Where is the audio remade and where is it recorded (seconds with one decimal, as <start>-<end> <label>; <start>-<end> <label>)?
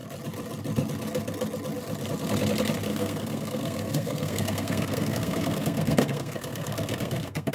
0.0-2.9 recorded; 2.9-7.5 remade